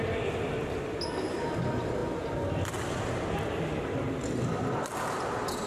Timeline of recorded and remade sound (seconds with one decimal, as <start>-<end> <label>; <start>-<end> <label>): 0.0-5.7 recorded